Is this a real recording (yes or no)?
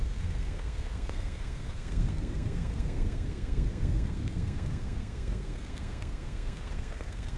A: no